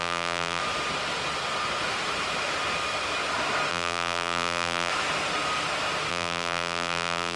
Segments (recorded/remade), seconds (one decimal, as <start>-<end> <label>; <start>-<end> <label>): 0.0-0.6 remade; 0.6-3.7 recorded; 3.7-4.9 remade; 4.9-6.1 recorded; 6.1-7.4 remade